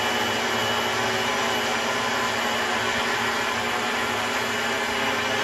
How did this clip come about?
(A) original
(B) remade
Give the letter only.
A